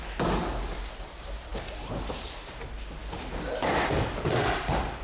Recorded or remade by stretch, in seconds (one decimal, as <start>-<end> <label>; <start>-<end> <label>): 0.0-5.0 recorded